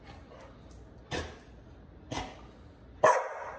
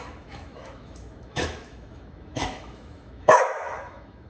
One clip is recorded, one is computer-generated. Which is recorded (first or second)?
first